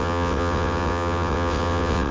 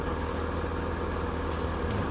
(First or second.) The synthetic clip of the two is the first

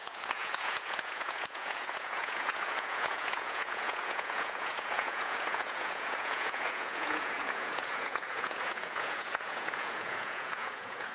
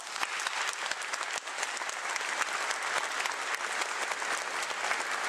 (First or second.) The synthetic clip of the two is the first